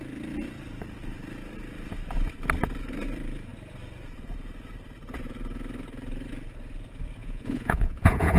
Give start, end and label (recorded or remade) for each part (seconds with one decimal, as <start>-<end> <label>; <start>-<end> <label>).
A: 0.0-7.2 recorded; 7.2-8.4 remade